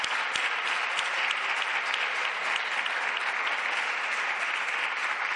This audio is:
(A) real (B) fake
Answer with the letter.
A